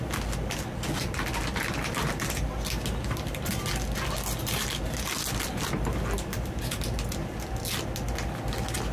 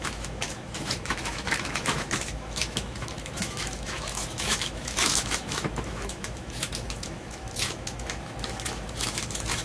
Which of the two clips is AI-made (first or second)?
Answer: second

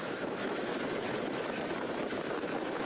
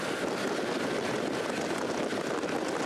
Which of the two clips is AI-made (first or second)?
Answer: first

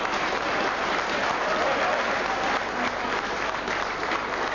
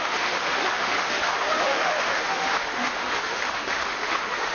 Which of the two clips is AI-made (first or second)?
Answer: second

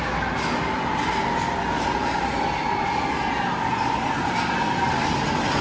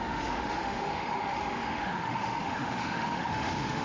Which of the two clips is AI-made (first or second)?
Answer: second